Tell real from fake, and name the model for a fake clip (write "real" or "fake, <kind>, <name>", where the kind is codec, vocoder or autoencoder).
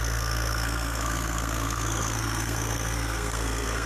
fake, codec, SNAC